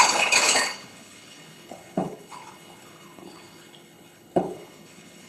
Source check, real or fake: fake